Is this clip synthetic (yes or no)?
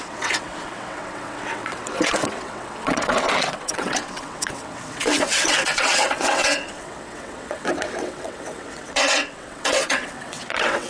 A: yes